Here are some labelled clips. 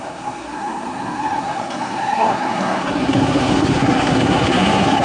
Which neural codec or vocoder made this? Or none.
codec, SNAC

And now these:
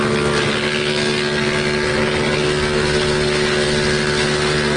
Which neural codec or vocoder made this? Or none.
none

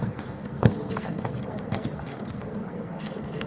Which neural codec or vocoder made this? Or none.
codec, SNAC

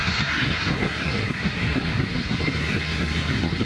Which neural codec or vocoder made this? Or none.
codec, SNAC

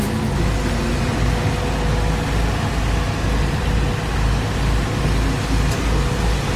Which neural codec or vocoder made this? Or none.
none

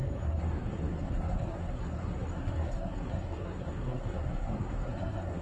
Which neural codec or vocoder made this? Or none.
codec, SNAC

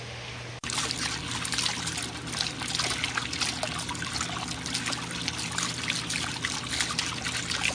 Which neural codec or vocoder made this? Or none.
none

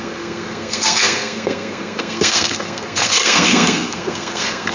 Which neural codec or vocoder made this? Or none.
codec, SNAC